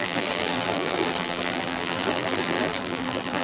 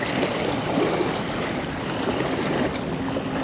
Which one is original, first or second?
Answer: second